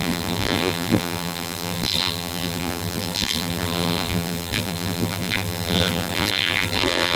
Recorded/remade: remade